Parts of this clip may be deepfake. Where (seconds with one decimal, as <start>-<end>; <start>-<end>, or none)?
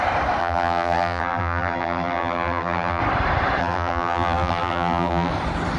0.4-3.0; 3.6-5.3